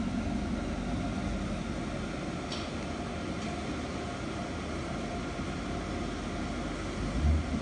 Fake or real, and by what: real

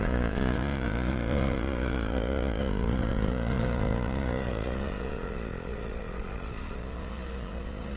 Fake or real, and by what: fake, vocoder, Vocos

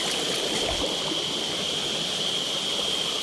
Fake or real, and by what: real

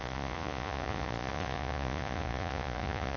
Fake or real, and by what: fake, vocoder, Vocos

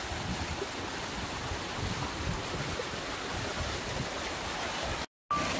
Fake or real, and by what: real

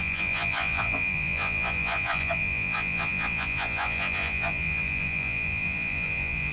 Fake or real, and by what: fake, vocoder, Vocos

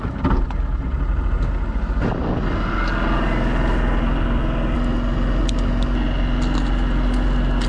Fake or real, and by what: real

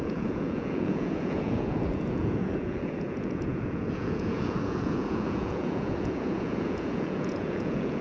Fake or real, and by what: fake, vocoder, Vocos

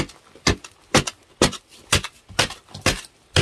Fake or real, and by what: real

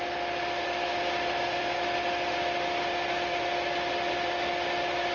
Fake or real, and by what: real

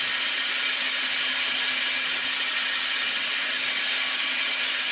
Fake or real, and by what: real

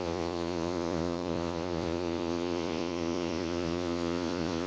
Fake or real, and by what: fake, vocoder, Vocos